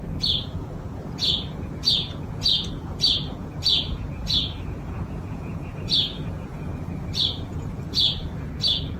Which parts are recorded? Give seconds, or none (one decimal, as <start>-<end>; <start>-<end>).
6.7-7.3